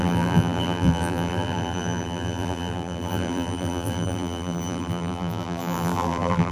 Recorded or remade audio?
remade